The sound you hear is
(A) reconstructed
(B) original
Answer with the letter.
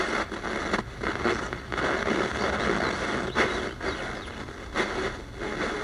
B